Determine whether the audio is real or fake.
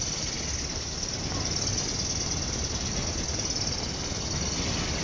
real